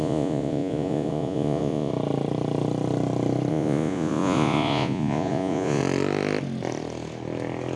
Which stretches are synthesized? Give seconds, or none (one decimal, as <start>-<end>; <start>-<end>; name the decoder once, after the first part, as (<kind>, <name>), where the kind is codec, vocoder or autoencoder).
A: 0.0-1.9 (vocoder, Vocos); 3.5-5.8